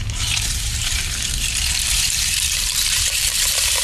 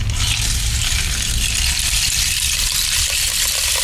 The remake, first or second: first